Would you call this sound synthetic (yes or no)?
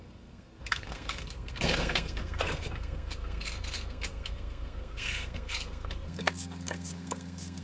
yes